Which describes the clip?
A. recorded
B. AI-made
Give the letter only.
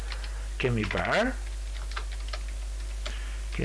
A